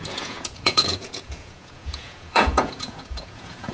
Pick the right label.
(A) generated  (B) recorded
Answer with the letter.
A